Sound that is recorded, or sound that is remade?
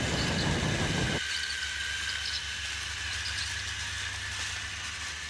recorded